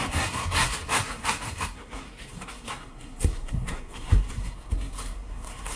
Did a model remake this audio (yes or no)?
yes